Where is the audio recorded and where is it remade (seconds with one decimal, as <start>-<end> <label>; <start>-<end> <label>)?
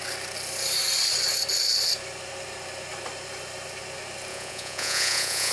0.0-4.3 recorded; 4.3-5.5 remade